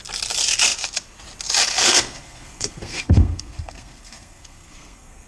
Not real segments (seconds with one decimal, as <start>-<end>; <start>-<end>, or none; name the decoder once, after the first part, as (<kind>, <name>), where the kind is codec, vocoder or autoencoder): 1.9-5.3 (codec, SNAC)